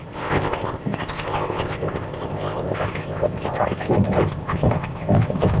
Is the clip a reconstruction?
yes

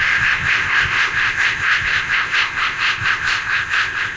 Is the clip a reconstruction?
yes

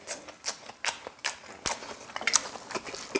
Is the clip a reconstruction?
no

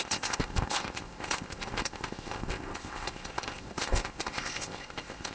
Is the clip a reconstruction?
yes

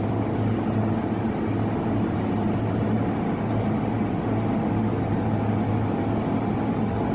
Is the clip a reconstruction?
no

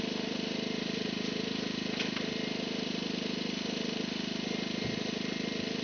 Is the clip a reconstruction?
no